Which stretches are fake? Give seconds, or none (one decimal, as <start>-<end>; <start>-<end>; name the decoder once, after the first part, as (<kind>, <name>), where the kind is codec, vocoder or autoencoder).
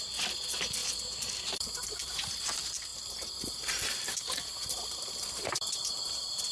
0.8-2.4 (vocoder, BigVGAN v2); 2.9-6.5